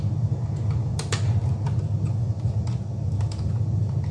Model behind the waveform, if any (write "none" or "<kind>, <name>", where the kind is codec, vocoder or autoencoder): none